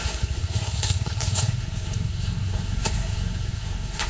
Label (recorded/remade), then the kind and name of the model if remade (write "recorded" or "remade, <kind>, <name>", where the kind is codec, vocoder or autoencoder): remade, codec, SNAC